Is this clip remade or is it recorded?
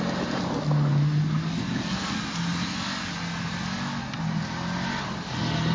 recorded